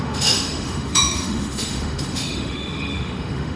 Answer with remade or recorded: remade